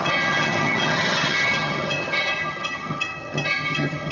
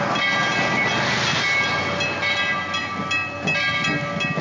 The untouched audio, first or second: second